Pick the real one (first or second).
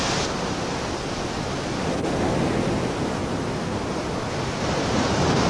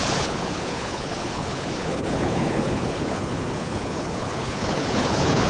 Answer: first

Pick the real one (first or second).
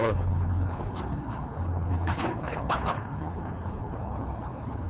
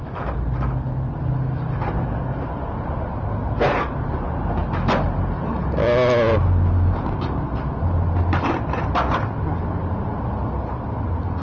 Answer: second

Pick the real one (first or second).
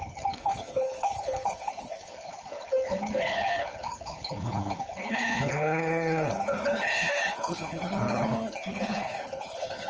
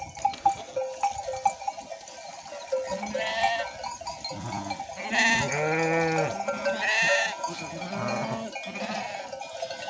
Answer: second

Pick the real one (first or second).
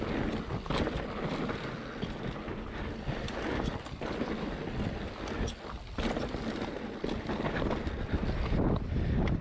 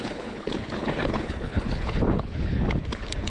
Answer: first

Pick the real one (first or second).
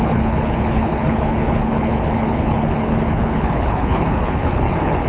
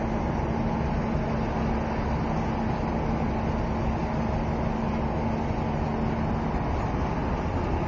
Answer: second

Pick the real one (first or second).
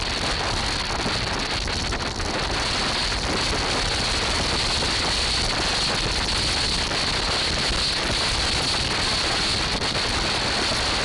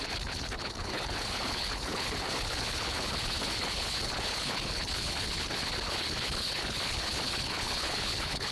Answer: first